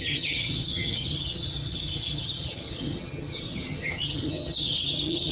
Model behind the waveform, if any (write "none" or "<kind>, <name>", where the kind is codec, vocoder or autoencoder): vocoder, HiFi-GAN